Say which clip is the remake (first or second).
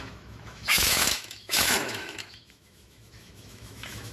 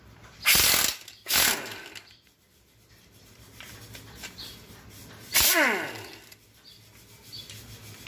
first